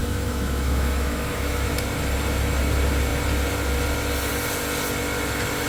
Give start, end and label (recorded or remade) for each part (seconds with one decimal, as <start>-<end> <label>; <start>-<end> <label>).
0.0-1.7 remade; 1.7-5.7 recorded